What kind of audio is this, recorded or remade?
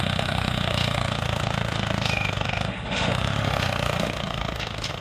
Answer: remade